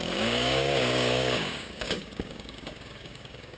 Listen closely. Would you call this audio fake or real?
fake